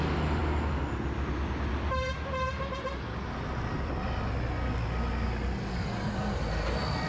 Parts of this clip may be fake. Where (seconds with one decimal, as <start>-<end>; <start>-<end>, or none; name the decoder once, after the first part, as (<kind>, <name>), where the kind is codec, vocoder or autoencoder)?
none

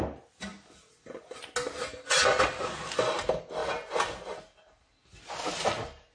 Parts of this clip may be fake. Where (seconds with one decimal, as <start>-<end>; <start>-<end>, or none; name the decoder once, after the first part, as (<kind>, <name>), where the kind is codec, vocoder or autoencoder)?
none

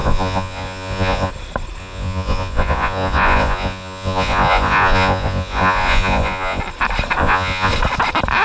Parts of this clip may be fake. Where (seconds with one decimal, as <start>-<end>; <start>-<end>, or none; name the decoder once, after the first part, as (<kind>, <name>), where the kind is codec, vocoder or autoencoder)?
0.0-1.3 (vocoder, Vocos); 1.8-6.6; 7.2-7.7

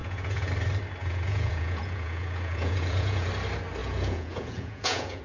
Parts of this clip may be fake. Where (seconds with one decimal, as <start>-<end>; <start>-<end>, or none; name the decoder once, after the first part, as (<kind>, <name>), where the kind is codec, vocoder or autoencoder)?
0.0-0.5 (vocoder, Vocos); 1.0-3.3; 3.8-5.2

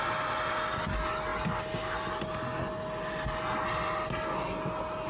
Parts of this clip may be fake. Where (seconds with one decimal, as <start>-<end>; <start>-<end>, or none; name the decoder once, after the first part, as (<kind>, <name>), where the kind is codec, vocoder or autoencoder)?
none